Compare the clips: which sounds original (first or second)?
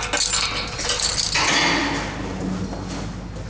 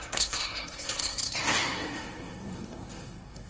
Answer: first